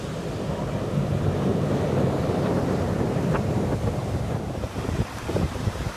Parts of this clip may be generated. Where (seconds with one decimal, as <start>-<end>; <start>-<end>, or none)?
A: 1.5-3.5; 4.0-6.0